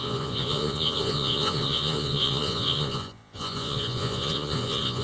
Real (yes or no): no